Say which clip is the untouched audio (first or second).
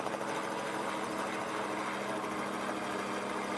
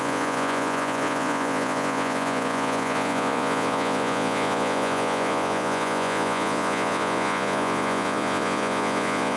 first